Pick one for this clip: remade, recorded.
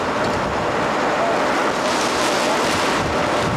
recorded